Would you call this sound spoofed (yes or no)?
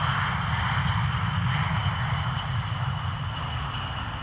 no